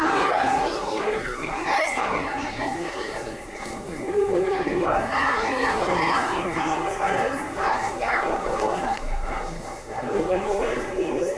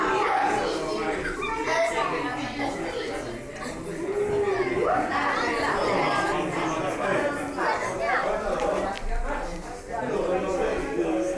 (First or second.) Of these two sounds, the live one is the second